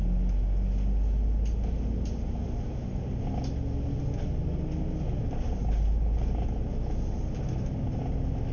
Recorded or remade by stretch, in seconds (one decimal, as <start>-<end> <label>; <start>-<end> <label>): 0.0-8.5 recorded